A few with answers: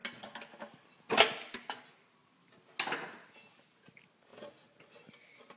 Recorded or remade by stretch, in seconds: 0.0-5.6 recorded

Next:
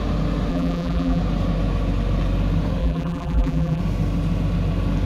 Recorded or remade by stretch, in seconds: 0.0-0.5 recorded; 0.5-1.2 remade; 1.2-2.8 recorded; 2.8-3.8 remade; 3.8-5.1 recorded

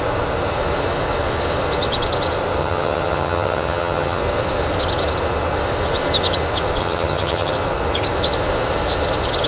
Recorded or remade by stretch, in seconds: 0.0-2.6 recorded; 2.6-4.2 remade; 4.2-6.8 recorded; 6.8-7.5 remade; 7.5-9.5 recorded

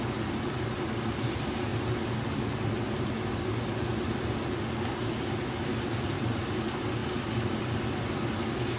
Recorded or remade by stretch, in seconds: 0.0-8.8 recorded

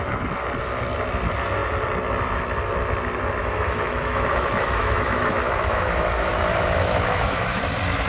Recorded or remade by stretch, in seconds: 0.0-3.4 recorded; 3.4-7.6 remade; 7.6-8.1 recorded

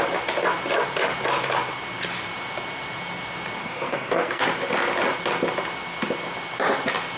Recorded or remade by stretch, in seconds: 0.0-3.6 recorded; 3.6-4.4 remade; 4.4-7.2 recorded

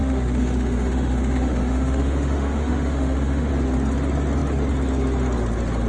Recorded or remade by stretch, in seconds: 0.0-3.5 remade; 3.5-5.9 recorded